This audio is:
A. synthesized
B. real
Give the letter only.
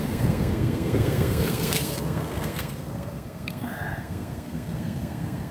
A